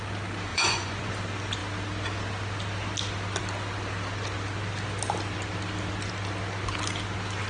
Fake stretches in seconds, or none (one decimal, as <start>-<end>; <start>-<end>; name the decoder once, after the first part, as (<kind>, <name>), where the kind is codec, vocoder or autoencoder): 0.5-1.1 (vocoder, Vocos)